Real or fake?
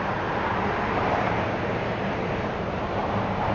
fake